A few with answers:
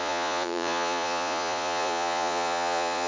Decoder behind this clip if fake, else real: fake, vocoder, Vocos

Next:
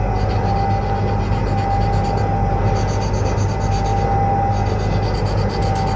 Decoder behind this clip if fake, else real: real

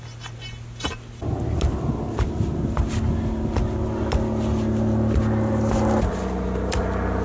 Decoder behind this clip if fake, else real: real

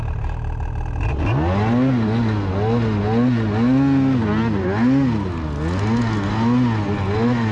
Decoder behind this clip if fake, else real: real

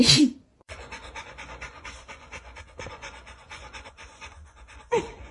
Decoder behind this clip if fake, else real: fake, vocoder, Vocos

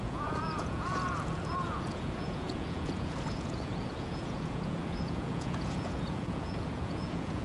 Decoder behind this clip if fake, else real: fake, vocoder, Vocos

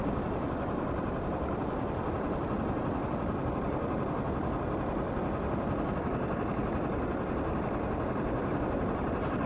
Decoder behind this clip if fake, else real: real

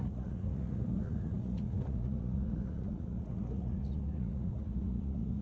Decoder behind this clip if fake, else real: fake, vocoder, Vocos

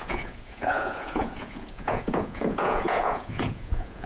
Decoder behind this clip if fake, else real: fake, vocoder, Vocos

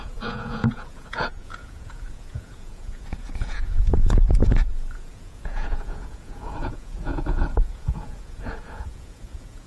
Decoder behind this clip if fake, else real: fake, vocoder, Vocos